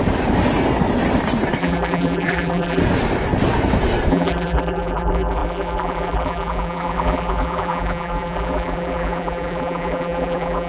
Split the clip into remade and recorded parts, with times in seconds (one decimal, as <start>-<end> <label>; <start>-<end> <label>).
0.0-1.6 recorded; 1.6-2.8 remade; 2.8-4.1 recorded; 4.1-10.7 remade